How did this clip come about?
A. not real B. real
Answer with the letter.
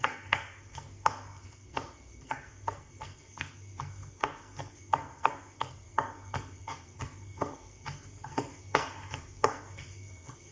A